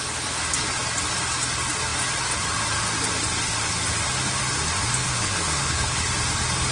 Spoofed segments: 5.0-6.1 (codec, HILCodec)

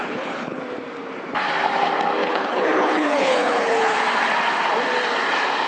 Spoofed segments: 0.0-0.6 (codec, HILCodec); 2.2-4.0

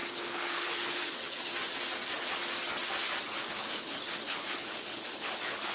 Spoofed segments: 0.0-1.5 (codec, HILCodec); 3.3-5.7